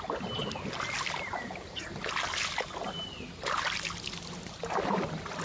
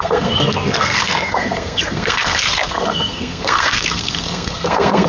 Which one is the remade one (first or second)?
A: second